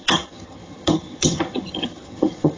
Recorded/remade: remade